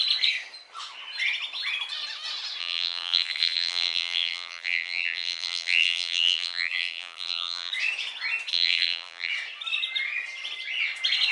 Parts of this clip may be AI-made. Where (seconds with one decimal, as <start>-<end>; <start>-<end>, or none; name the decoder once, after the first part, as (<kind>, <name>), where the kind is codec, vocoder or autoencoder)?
2.6-7.7 (vocoder, BigVGAN v2); 8.5-9.3